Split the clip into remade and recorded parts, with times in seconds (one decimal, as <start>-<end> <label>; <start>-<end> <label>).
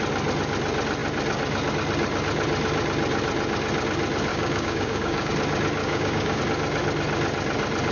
0.0-4.3 recorded; 4.3-5.3 remade; 5.3-5.8 recorded; 5.8-6.4 remade; 6.4-7.9 recorded